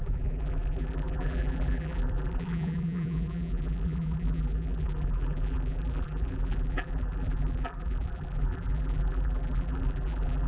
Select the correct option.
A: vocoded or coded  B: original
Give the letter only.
A